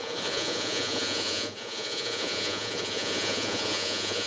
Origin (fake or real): fake